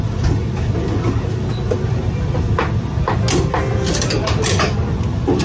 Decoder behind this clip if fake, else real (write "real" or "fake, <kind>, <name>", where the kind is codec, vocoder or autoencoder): real